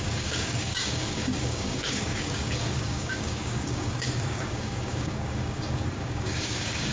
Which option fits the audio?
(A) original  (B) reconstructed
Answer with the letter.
B